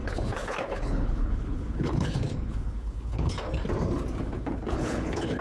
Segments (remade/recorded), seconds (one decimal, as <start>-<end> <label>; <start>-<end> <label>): 0.0-3.5 remade; 3.5-4.2 recorded; 4.2-5.4 remade